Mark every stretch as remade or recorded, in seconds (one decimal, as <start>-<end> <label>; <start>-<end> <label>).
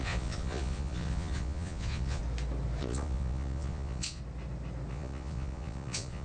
0.0-2.2 remade; 2.2-2.8 recorded; 2.8-4.2 remade; 4.2-4.9 recorded; 4.9-6.2 remade